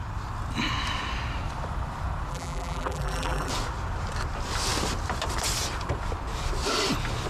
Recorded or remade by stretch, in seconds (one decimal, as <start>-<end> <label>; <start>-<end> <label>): 0.0-2.3 recorded; 2.3-3.5 remade; 3.5-7.3 recorded